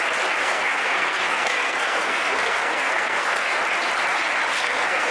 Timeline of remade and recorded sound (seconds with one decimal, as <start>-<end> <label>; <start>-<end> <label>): 0.0-0.4 recorded; 0.4-3.5 remade; 3.5-4.5 recorded; 4.5-5.1 remade